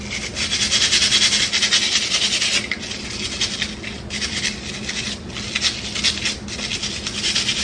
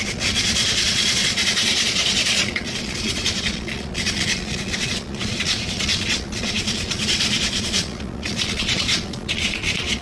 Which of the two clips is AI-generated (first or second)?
second